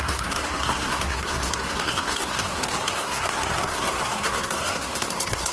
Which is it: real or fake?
fake